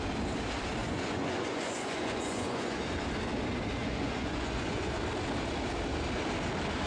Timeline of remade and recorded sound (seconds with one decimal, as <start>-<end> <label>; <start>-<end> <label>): 0.0-0.8 recorded; 0.8-2.8 remade; 2.8-3.8 recorded; 3.8-5.0 remade; 5.0-6.9 recorded